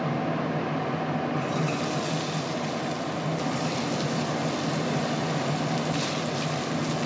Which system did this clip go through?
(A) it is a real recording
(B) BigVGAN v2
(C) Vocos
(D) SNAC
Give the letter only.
A